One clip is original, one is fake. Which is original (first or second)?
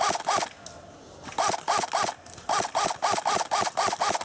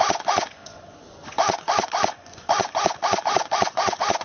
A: first